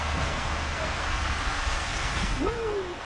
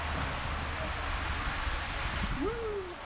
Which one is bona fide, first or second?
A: second